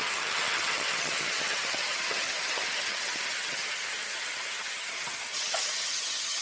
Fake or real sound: fake